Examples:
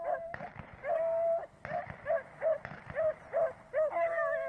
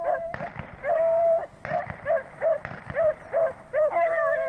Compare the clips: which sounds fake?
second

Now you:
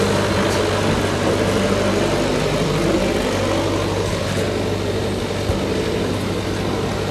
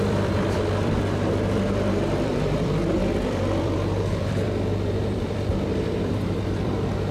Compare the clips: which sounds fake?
second